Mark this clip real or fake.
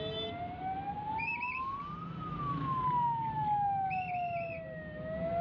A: real